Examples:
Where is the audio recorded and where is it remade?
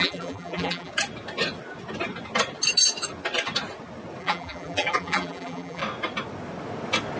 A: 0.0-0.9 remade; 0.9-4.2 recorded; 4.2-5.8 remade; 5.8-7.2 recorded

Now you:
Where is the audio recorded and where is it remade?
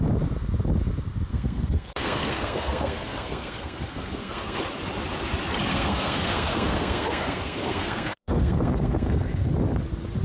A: 0.0-1.3 recorded; 1.3-4.6 remade; 4.6-5.7 recorded; 5.7-9.5 remade; 9.5-10.2 recorded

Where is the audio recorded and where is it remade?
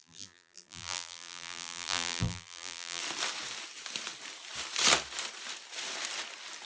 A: 0.0-3.0 remade; 3.0-6.7 recorded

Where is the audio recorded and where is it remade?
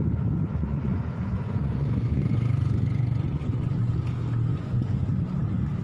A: 0.0-0.6 recorded; 0.6-3.9 remade; 3.9-4.5 recorded; 4.5-5.0 remade; 5.0-5.8 recorded